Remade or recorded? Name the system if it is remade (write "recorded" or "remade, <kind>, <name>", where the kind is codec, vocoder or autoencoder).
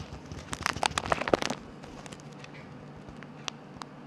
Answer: recorded